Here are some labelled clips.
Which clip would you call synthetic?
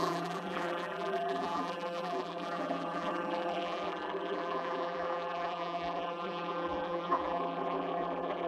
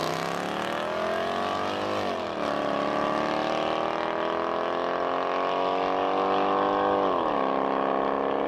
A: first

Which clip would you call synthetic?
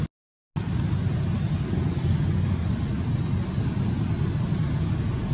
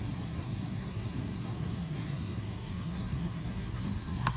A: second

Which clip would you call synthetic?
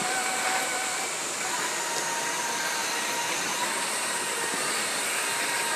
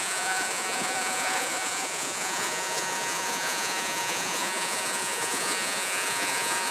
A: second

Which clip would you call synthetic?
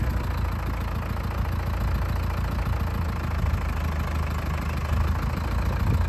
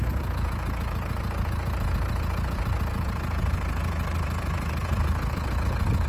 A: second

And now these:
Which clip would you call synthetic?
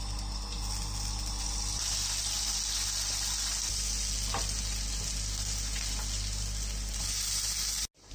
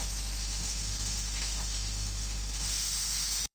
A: second